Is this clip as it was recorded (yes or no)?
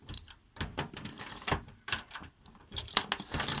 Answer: yes